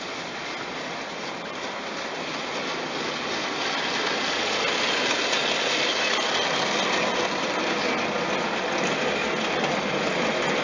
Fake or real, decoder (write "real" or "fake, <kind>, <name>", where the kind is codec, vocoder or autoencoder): real